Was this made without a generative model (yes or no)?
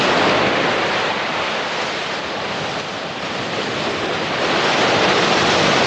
yes